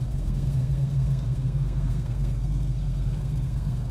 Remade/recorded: remade